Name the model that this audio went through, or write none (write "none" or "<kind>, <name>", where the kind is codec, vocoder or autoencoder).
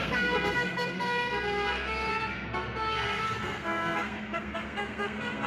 codec, SNAC